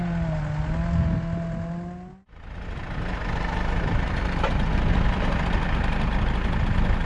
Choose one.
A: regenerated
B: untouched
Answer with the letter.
B